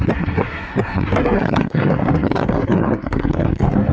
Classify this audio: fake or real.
fake